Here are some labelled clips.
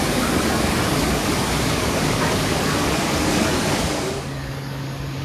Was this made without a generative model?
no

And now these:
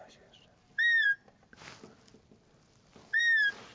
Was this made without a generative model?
yes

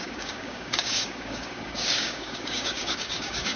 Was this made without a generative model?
no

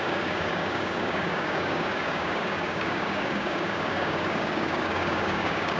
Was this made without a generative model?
no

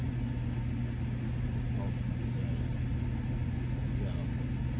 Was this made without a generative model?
yes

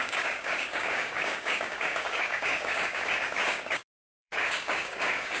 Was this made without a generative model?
no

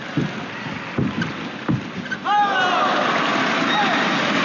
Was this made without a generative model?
yes